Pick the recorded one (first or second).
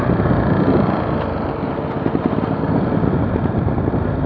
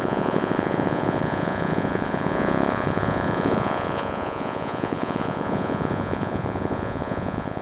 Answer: first